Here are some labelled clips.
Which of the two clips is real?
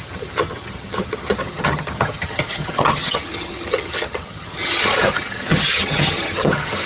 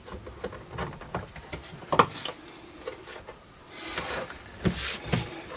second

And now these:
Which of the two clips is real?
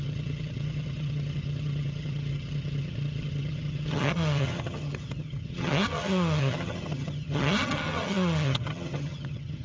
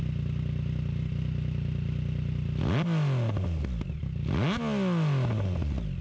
second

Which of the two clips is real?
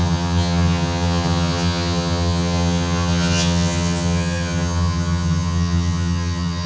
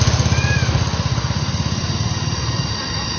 second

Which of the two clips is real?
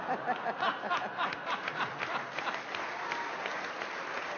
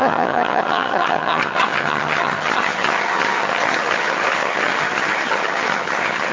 first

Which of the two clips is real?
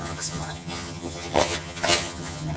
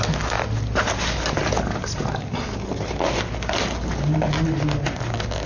second